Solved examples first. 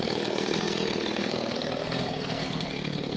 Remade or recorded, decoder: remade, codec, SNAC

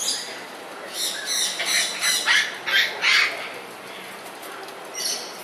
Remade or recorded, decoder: recorded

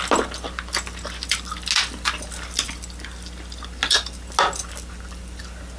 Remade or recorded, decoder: recorded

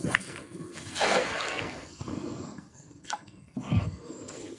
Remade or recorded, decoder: remade, codec, SNAC